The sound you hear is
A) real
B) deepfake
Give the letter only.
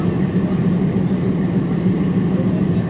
A